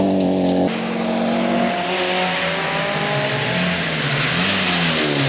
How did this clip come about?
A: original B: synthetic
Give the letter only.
A